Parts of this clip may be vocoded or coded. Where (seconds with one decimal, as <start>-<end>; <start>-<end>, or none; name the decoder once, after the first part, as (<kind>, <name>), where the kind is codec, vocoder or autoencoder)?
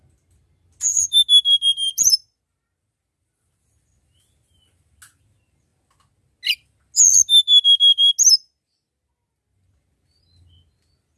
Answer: none